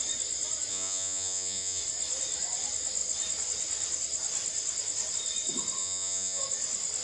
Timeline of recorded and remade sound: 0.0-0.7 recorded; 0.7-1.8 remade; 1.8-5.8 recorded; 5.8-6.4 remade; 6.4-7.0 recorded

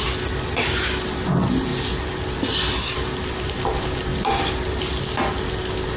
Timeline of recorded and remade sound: 0.0-6.0 recorded

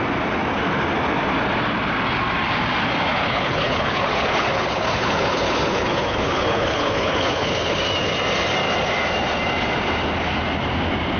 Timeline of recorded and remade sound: 0.0-3.2 recorded; 3.2-7.8 remade; 7.8-11.2 recorded

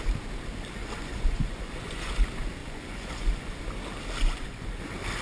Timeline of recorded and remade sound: 0.0-0.8 recorded; 0.8-2.1 remade; 2.1-2.6 recorded; 2.6-3.6 remade; 3.6-4.2 recorded; 4.2-4.8 remade; 4.8-5.2 recorded

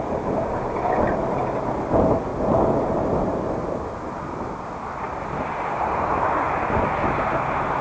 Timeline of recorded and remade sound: 0.0-7.8 recorded

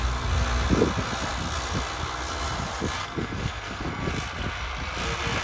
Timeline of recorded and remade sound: 0.0-3.0 recorded; 3.0-4.1 remade; 4.1-5.4 recorded